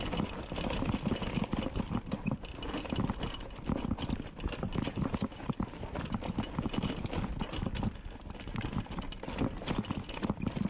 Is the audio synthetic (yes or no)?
no